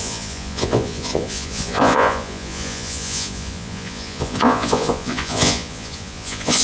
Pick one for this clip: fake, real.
fake